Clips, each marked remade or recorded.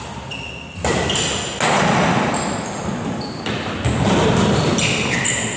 recorded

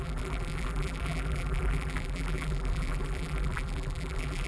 remade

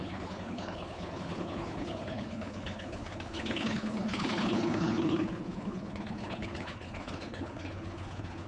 remade